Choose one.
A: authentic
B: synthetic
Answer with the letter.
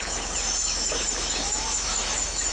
B